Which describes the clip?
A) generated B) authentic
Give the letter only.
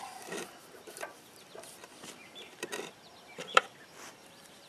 A